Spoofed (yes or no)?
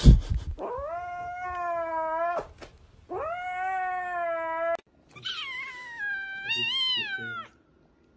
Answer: no